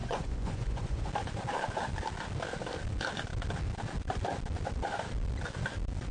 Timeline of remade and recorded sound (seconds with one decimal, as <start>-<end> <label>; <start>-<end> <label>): 0.0-1.1 remade; 1.1-6.1 recorded